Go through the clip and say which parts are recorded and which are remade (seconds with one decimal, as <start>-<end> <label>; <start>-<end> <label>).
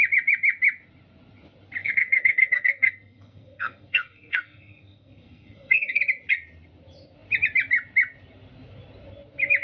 0.0-1.8 recorded; 1.8-6.0 remade; 6.0-9.6 recorded